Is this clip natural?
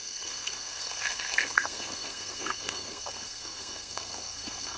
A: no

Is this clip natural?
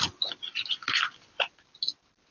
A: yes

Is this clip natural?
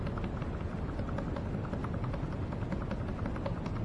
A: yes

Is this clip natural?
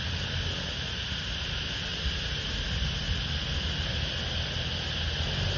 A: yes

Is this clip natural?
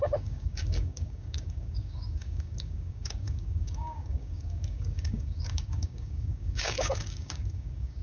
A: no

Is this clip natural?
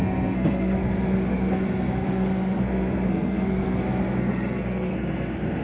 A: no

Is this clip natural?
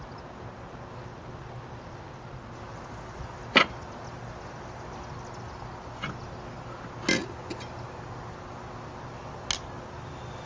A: yes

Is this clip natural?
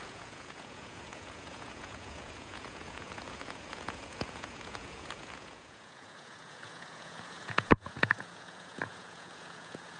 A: no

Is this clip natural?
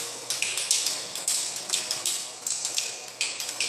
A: no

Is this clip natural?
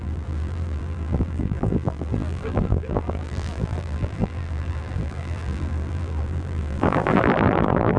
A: no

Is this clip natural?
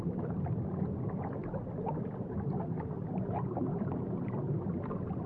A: yes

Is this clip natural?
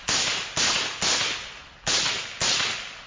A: yes